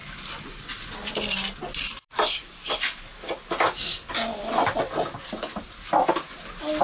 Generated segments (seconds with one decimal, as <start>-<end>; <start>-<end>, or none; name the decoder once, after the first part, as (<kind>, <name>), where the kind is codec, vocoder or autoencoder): none